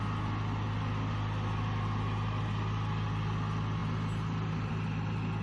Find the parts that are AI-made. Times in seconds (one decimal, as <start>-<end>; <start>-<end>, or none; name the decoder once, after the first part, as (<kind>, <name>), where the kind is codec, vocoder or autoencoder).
none